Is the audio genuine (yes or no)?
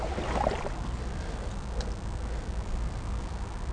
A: yes